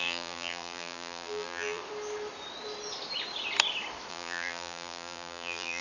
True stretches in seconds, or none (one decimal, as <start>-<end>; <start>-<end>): 1.8-4.1